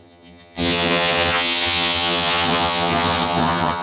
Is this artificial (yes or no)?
yes